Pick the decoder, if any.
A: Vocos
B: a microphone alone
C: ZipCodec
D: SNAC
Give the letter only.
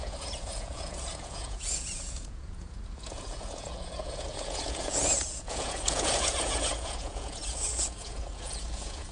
A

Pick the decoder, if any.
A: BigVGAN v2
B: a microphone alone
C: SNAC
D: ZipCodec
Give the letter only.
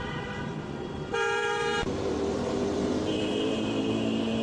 A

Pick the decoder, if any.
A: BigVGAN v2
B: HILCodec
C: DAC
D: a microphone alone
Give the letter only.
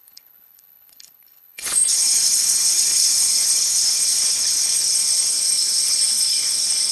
B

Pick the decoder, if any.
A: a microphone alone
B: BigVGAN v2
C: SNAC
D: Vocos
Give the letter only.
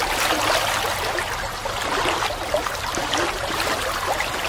A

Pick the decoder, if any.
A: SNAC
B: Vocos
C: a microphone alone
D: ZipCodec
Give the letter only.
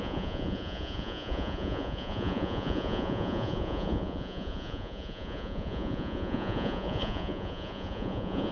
B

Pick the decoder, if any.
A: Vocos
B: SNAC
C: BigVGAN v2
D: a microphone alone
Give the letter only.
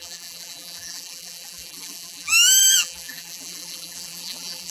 C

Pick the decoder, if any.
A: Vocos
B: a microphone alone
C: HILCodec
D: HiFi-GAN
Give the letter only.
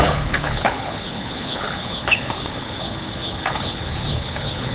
C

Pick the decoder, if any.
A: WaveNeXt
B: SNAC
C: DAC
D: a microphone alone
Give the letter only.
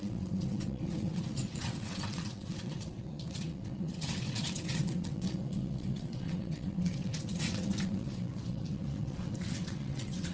A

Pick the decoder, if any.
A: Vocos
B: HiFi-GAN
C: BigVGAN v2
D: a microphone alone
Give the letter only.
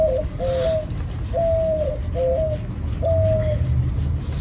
D